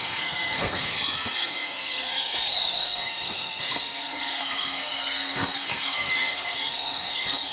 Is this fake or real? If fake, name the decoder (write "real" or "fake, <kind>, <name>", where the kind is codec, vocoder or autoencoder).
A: fake, codec, SNAC